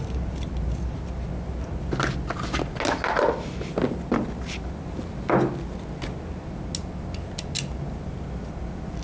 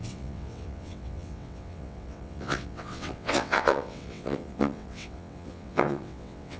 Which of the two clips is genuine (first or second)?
first